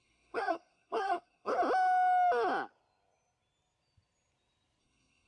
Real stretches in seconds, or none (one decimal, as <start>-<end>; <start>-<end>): 1.6-4.8